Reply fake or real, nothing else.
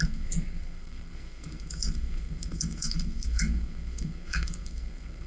fake